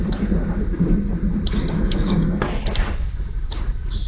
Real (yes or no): yes